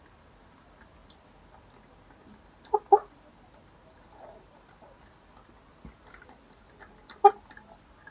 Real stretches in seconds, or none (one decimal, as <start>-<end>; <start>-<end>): 0.0-8.1